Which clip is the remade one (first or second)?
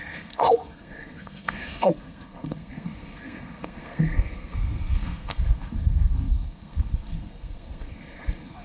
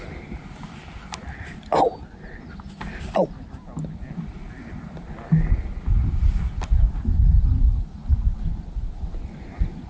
first